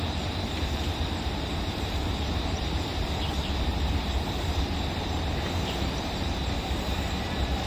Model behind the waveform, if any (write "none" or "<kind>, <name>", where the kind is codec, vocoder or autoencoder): vocoder, BigVGAN v2